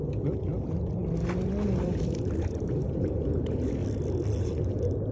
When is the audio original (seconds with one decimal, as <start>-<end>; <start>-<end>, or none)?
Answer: 0.5-1.8; 3.8-4.4